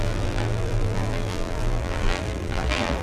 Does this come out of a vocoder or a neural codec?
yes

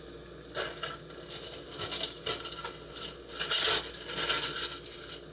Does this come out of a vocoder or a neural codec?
no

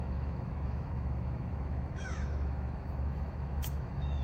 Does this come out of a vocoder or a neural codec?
yes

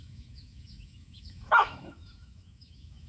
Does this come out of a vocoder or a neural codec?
yes